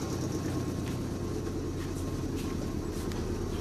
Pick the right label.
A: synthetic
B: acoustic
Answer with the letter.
B